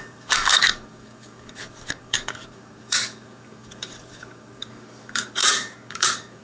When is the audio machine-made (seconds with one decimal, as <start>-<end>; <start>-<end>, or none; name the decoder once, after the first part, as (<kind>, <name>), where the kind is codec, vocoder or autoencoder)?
0.0-6.4 (codec, DAC)